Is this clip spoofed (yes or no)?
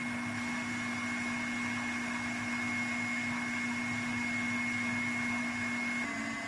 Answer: no